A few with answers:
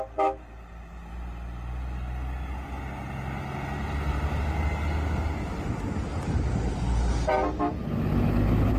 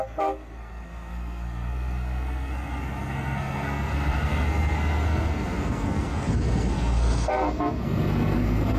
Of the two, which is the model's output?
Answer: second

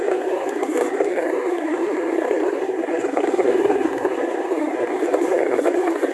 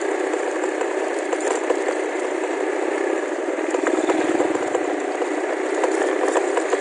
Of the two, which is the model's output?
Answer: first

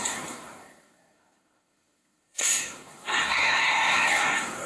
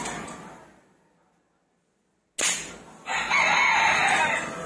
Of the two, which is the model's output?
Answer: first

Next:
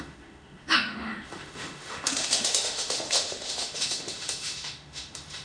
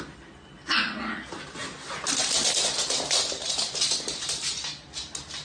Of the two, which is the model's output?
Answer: first